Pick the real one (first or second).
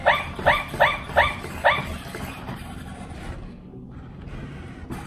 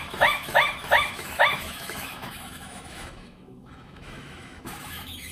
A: first